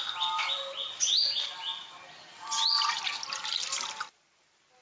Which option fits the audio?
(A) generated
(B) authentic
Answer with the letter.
B